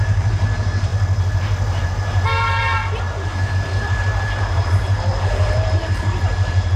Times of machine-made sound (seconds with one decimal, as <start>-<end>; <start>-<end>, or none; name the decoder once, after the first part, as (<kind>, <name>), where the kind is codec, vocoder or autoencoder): 0.0-0.9 (vocoder, BigVGAN v2); 1.8-6.8

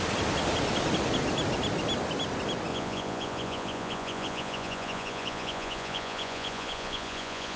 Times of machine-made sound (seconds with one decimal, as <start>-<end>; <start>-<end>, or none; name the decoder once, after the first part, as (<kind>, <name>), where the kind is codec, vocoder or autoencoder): 2.7-7.6 (vocoder, Vocos)

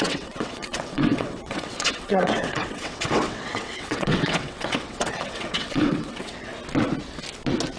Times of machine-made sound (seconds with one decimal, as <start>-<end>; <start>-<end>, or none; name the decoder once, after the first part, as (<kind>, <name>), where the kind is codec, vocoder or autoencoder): 0.0-6.5 (vocoder, WaveNeXt)